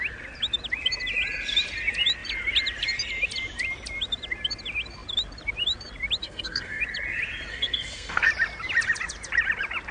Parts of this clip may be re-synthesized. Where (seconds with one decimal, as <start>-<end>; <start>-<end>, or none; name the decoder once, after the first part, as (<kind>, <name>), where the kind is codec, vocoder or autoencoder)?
6.2-6.8 (codec, SNAC); 7.5-8.3